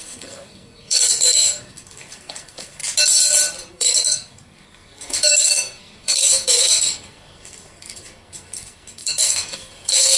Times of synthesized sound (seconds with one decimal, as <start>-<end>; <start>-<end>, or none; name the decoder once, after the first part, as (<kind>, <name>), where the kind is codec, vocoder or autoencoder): 0.0-2.8 (codec, SNAC); 3.7-10.2